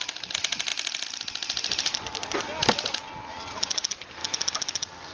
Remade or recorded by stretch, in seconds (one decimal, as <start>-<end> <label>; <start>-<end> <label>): 0.0-0.7 recorded; 0.7-3.5 remade; 3.5-4.2 recorded; 4.2-5.1 remade